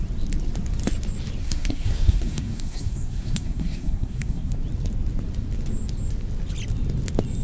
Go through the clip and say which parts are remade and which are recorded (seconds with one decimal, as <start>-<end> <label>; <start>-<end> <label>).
0.0-1.4 recorded; 1.4-4.5 remade; 4.5-7.4 recorded